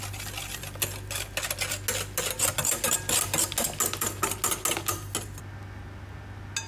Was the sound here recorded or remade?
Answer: recorded